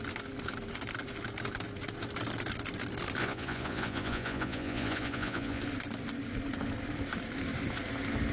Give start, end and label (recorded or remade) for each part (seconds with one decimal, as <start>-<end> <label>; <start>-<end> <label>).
0.0-3.2 recorded; 3.2-5.6 remade; 5.6-8.3 recorded